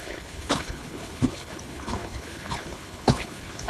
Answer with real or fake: fake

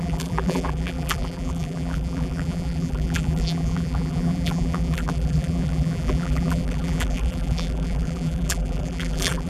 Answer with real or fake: fake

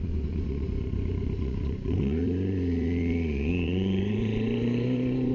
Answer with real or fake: fake